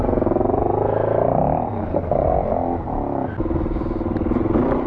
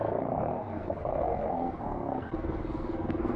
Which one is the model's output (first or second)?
second